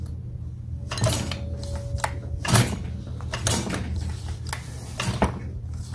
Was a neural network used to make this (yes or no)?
no